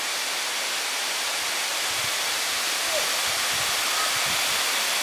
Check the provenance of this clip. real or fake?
fake